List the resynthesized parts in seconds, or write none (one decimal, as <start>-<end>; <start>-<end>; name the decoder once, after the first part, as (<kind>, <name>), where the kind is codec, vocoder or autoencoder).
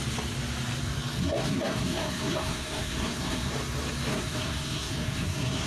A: 1.2-3.5 (codec, SNAC); 4.1-5.7